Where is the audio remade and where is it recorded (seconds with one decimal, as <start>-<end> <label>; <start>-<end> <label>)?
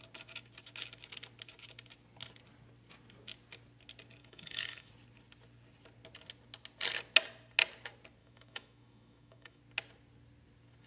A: 0.0-4.2 recorded; 4.2-4.9 remade; 4.9-8.2 recorded; 8.2-9.6 remade; 9.6-10.9 recorded